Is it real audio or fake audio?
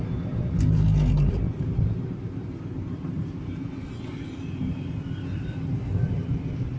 real